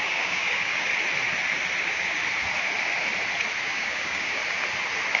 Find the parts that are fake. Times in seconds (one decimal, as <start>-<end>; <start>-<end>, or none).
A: 0.0-0.9; 1.8-2.2; 3.6-4.4